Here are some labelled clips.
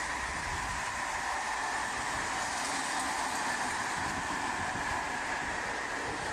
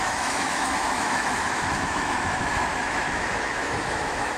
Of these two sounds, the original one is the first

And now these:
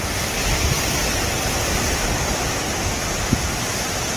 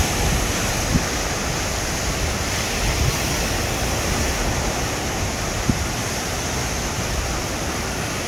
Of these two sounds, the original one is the second